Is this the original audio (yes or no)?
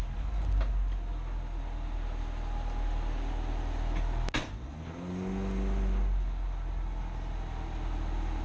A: yes